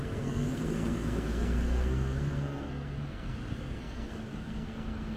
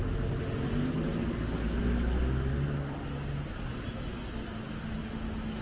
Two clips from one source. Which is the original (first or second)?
second